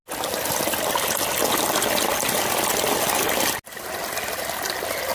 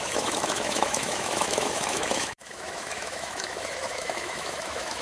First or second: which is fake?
second